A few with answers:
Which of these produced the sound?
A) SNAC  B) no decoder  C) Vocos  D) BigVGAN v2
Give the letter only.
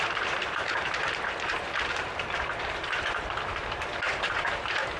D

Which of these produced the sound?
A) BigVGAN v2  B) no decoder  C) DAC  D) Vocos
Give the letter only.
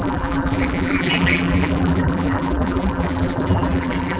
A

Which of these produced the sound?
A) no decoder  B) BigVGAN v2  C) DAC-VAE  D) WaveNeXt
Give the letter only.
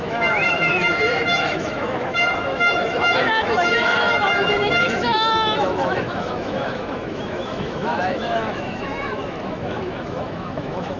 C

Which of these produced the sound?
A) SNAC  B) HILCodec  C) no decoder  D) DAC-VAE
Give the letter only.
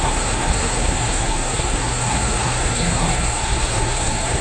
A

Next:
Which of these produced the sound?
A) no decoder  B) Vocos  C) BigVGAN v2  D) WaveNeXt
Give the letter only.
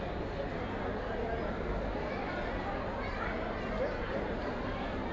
A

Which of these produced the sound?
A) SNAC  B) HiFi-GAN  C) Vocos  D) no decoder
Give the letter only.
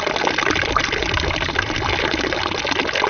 D